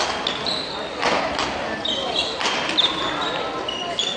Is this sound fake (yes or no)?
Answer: no